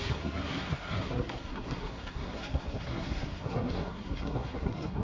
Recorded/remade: remade